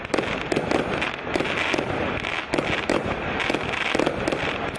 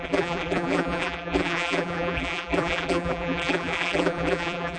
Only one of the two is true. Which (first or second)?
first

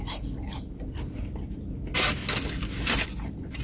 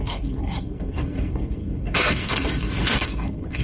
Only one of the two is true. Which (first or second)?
first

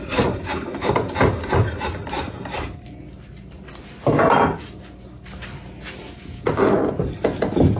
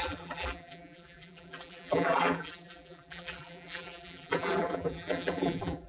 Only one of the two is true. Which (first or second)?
first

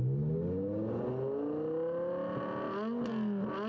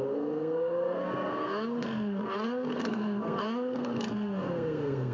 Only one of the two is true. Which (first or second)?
first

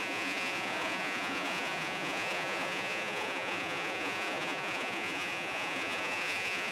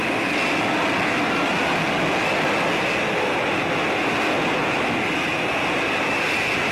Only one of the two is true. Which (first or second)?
second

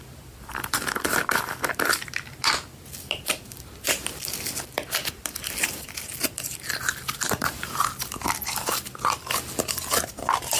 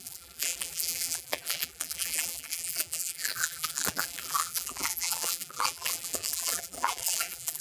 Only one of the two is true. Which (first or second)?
first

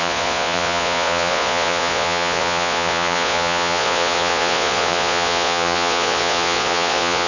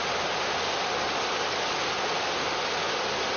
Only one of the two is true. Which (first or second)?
second